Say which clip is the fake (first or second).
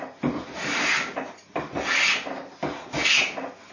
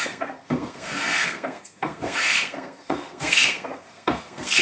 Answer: second